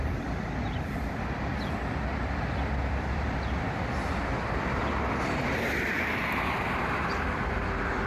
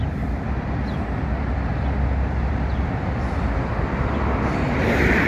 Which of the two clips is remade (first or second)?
first